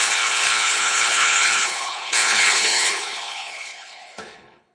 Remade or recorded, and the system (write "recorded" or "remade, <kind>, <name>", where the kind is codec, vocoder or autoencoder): remade, codec, HILCodec